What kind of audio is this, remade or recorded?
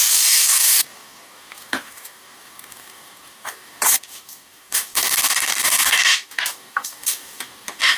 remade